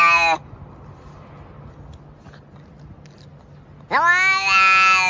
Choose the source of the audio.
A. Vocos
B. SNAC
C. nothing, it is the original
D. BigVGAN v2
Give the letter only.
C